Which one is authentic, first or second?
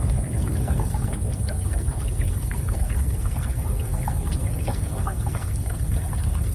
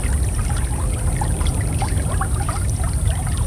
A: second